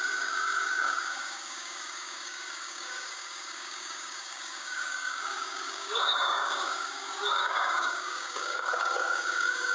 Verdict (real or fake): fake